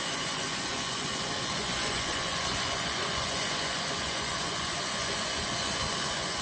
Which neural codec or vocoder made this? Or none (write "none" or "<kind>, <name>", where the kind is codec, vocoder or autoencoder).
vocoder, Vocos